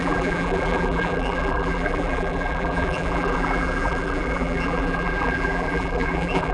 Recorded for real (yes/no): no